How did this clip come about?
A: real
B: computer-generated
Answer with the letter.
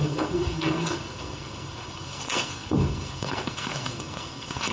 B